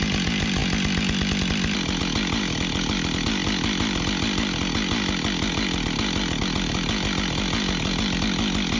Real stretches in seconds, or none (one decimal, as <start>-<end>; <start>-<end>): 0.0-8.8